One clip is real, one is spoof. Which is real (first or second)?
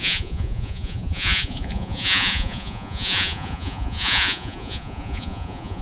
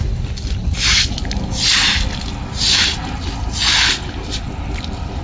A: second